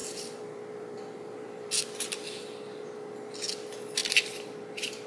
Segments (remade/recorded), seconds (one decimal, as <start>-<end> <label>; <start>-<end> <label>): 0.0-1.8 remade; 1.8-4.0 recorded; 4.0-5.1 remade